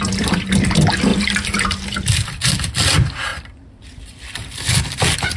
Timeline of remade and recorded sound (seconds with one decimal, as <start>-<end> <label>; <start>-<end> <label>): 0.0-1.1 remade; 1.1-2.1 recorded; 2.1-5.4 remade